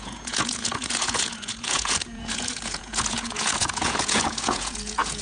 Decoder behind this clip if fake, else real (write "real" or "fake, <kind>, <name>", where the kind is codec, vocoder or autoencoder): fake, vocoder, Vocos